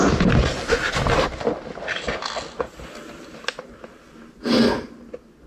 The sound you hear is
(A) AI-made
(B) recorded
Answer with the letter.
B